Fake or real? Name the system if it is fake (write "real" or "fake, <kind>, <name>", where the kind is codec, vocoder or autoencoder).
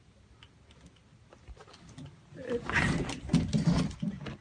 real